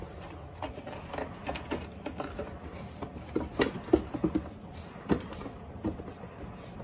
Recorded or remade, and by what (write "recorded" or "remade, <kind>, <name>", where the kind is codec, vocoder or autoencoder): recorded